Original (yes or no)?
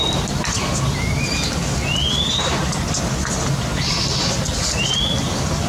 yes